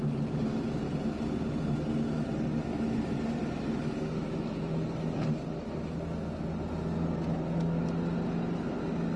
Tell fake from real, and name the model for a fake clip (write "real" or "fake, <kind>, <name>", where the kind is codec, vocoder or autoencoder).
real